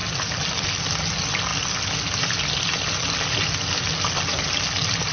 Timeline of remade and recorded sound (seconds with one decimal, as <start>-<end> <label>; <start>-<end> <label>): 0.0-5.1 recorded